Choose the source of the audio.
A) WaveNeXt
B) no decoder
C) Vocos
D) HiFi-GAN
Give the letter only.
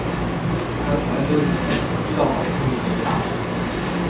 B